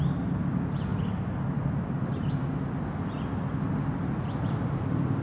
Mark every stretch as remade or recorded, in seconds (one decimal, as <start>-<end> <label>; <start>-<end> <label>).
0.0-5.2 recorded